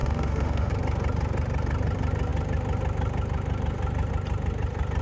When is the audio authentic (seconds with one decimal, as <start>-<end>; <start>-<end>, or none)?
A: 0.7-5.0